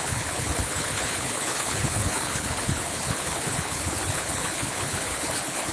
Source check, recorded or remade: remade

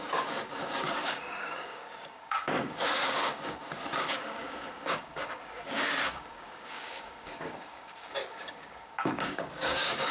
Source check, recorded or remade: remade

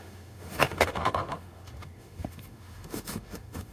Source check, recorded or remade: remade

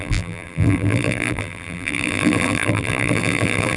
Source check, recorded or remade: remade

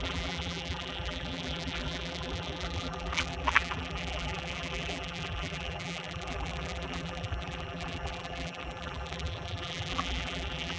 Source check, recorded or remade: remade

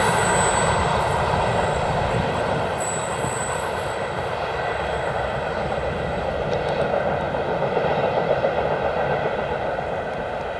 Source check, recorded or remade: recorded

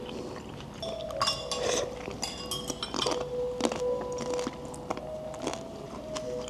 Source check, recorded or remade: recorded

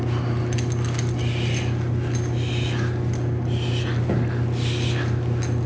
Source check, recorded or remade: recorded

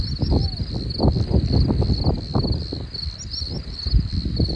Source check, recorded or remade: recorded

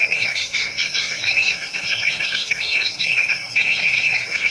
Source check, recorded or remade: remade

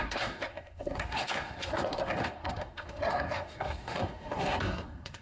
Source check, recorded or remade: remade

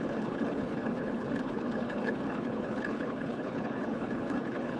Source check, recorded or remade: remade